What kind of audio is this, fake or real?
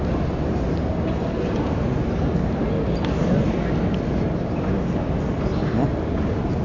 real